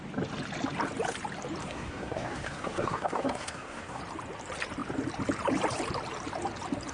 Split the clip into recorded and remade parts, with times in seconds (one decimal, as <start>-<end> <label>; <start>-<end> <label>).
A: 0.0-1.6 recorded; 1.6-4.0 remade; 4.0-6.9 recorded